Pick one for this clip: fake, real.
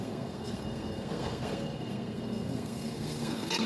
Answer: fake